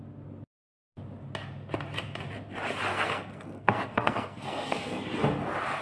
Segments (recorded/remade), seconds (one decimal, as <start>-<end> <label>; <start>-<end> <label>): 0.0-2.9 recorded; 2.9-5.0 remade; 5.0-5.8 recorded